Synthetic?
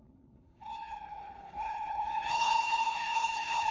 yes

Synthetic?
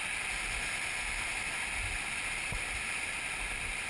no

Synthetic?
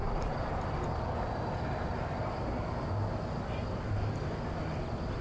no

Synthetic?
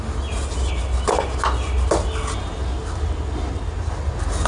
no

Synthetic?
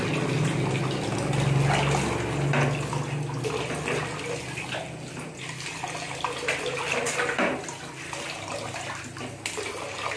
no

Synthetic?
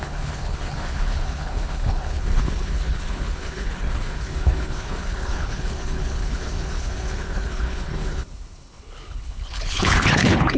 yes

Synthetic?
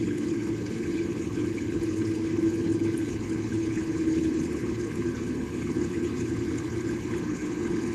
yes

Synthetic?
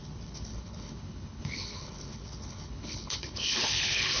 yes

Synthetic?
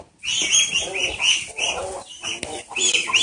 no